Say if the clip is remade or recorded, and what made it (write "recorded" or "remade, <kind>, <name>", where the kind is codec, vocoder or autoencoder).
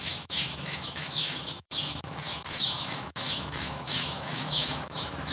remade, autoencoder, DAC-VAE